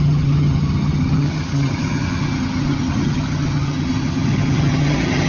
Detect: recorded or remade remade